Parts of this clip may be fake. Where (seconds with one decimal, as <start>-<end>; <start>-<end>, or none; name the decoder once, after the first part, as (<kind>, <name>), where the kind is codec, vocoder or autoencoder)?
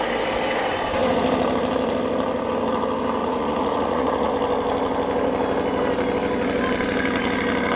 3.2-4.3 (vocoder, Vocos)